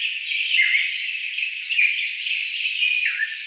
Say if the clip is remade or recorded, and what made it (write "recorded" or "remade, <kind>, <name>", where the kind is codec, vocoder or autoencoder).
recorded